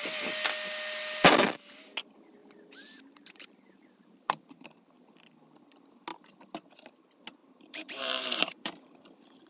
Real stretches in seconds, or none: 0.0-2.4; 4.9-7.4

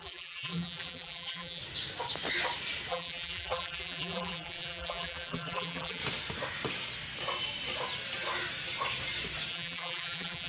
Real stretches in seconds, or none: 1.6-2.9; 6.0-9.5

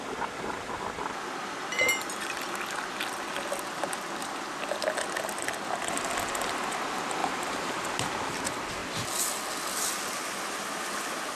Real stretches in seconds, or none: 0.0-7.2; 7.9-11.4

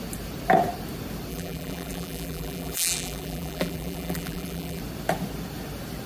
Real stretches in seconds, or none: 0.0-1.3; 4.8-6.1

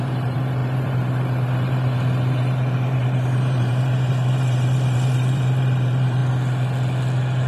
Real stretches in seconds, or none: 6.2-7.5